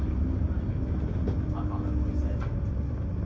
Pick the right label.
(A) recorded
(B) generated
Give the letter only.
A